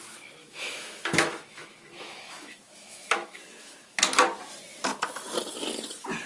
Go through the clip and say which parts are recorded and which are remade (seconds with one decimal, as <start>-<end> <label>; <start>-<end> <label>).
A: 0.0-0.4 recorded; 0.4-4.0 remade; 4.0-6.3 recorded